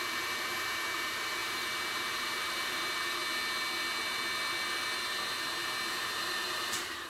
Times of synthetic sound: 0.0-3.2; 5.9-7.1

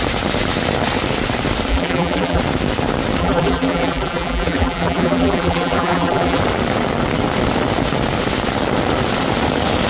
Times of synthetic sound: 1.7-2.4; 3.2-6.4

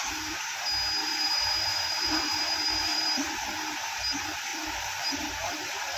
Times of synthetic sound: 1.0-3.4; 4.5-5.6

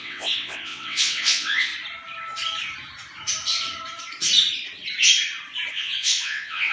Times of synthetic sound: 0.0-1.7; 5.7-6.7